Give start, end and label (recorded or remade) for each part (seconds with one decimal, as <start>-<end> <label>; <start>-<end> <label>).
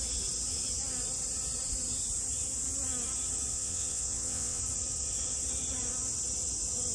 0.0-3.5 recorded; 3.5-4.6 remade; 4.6-6.9 recorded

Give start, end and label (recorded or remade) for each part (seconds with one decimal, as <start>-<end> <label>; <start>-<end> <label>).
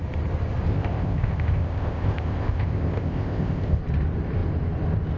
0.0-0.7 recorded; 0.7-3.8 remade; 3.8-5.2 recorded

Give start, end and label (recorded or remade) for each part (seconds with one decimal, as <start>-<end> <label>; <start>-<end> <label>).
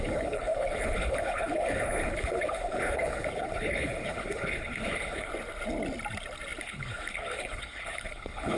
0.0-5.3 remade; 5.3-6.6 recorded; 6.6-8.6 remade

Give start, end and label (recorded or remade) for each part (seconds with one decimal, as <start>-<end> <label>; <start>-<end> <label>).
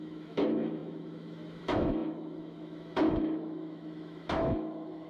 0.0-5.1 remade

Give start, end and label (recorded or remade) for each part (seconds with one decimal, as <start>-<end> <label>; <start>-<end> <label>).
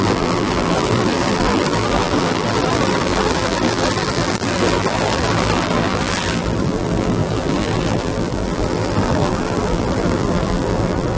0.0-11.2 remade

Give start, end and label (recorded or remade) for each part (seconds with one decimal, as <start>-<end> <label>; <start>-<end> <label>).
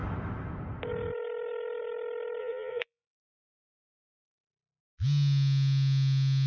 0.0-2.4 recorded; 2.4-4.8 remade; 4.8-6.5 recorded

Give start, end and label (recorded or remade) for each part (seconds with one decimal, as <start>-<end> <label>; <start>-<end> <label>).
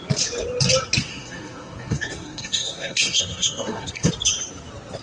0.0-1.1 recorded; 1.1-4.1 remade; 4.1-5.0 recorded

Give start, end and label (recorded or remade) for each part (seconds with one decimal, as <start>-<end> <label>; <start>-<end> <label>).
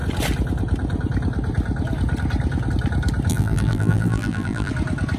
0.0-3.3 recorded; 3.3-4.7 remade; 4.7-5.2 recorded